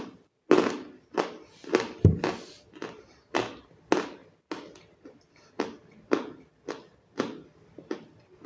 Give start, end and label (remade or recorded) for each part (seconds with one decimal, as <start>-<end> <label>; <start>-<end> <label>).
0.0-8.5 recorded